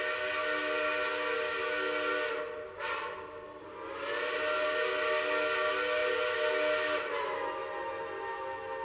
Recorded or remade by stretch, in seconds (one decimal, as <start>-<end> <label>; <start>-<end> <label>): 0.0-8.8 recorded